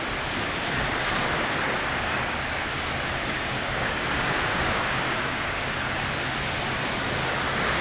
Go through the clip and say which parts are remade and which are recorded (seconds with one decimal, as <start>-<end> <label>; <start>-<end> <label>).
0.0-3.2 recorded; 3.2-5.9 remade; 5.9-7.8 recorded